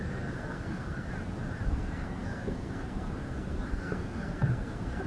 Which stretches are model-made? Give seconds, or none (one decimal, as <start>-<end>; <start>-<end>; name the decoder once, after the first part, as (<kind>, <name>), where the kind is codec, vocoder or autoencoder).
0.0-1.1 (codec, SNAC); 1.7-5.1